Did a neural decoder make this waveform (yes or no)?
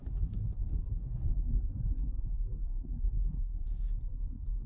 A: yes